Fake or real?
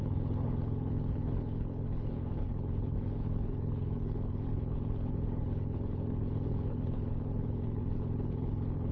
fake